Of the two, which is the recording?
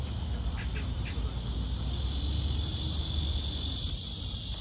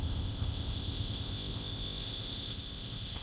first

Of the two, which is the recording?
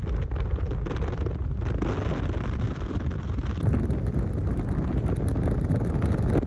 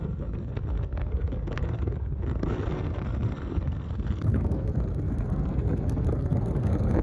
first